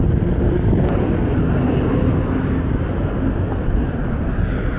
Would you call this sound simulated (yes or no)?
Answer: no